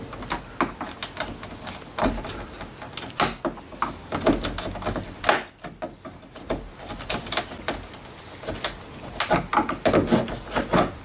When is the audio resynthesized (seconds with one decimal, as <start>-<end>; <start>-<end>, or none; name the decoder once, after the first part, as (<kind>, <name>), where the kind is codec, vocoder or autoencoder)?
none